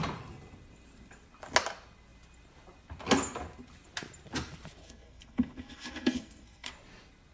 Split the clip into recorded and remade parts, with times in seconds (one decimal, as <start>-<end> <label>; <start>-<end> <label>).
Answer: 0.0-4.8 recorded; 4.8-6.7 remade; 6.7-7.3 recorded